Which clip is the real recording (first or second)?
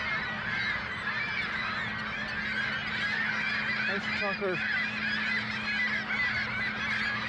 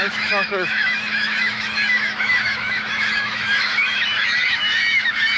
first